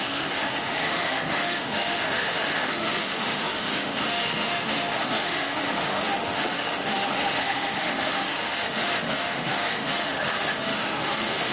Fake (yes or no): yes